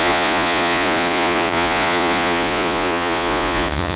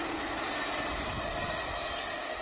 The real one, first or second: second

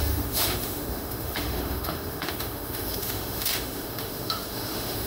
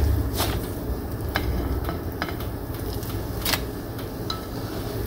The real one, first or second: second